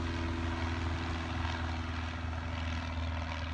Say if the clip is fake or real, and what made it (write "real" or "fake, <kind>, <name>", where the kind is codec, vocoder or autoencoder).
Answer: real